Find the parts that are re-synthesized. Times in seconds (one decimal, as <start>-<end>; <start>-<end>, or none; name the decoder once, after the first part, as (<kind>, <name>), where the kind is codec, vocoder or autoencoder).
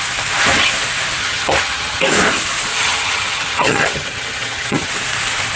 1.2-2.0 (vocoder, HiFi-GAN); 2.7-4.9